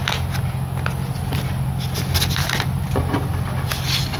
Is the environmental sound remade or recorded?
recorded